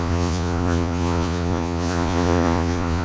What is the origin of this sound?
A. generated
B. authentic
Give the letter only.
A